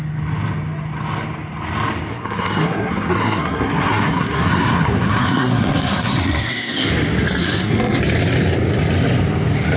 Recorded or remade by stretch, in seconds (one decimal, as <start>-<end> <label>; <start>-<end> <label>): 0.0-2.1 recorded; 2.1-6.9 remade; 6.9-7.4 recorded; 7.4-8.0 remade; 8.0-9.8 recorded